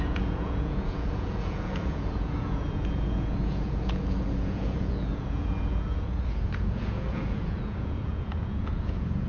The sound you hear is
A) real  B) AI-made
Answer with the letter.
B